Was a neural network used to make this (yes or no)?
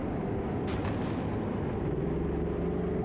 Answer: no